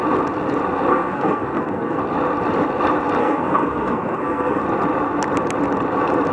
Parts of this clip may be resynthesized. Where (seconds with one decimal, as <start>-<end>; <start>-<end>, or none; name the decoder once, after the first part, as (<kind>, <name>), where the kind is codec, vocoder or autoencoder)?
0.9-2.0 (codec, SNAC); 3.2-4.6